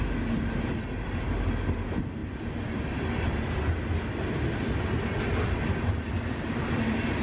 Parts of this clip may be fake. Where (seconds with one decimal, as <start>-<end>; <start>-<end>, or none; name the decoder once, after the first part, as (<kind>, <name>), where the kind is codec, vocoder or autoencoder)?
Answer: none